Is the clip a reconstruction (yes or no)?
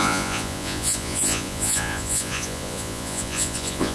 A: yes